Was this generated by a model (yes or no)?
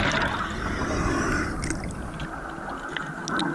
no